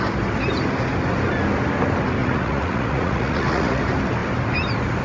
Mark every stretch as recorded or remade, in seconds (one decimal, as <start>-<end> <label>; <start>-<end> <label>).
0.0-2.2 recorded; 2.2-3.8 remade; 3.8-5.0 recorded